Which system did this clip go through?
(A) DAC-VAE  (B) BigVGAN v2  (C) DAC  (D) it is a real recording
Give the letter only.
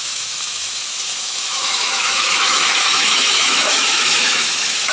A